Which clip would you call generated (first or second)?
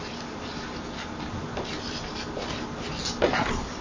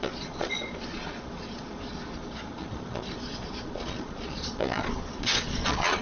second